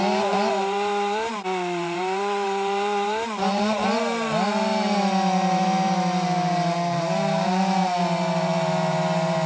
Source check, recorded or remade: remade